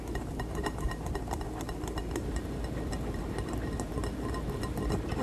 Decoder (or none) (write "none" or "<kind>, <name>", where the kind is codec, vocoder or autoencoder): none